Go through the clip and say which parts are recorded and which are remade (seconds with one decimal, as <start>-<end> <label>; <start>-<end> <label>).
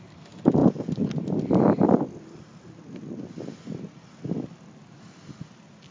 0.0-5.9 recorded